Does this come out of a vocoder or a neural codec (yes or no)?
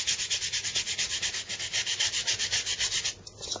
no